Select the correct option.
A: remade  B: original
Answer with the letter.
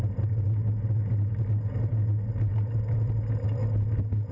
B